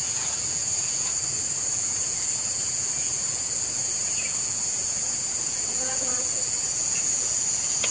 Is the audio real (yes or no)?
no